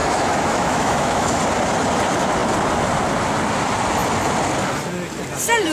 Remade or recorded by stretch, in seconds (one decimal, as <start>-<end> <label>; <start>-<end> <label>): 0.0-1.4 remade; 1.4-5.7 recorded